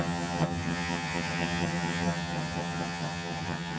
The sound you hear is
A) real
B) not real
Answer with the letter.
B